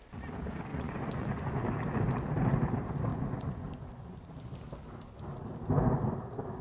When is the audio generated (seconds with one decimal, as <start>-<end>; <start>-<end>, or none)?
0.7-1.6; 3.1-4.3